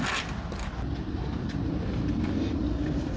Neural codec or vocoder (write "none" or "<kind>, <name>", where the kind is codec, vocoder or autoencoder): none